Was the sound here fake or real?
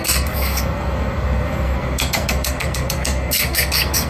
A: fake